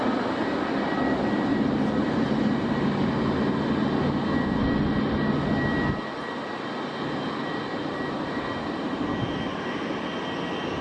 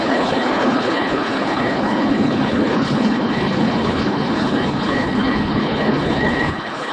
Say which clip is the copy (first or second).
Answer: second